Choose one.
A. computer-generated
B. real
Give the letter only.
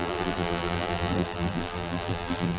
A